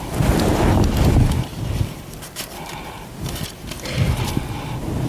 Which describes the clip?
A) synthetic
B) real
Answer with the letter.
A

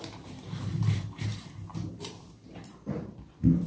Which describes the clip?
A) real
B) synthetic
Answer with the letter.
B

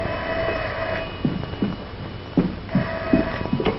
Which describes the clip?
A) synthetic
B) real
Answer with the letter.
B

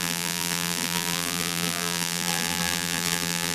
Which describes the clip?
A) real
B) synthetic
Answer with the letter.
B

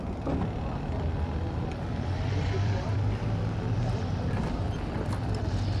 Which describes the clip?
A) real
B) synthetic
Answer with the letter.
B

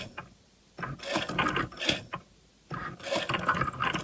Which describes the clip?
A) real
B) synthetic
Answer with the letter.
A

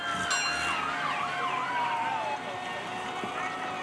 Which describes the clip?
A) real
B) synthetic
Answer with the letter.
A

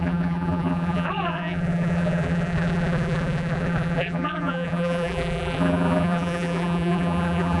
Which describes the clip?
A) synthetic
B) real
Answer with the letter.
A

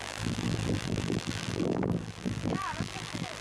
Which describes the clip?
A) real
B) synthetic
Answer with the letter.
B